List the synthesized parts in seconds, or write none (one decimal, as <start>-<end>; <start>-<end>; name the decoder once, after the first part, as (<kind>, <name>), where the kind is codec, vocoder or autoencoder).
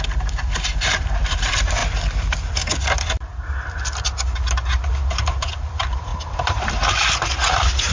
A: 0.0-1.8 (vocoder, BigVGAN v2); 4.8-7.9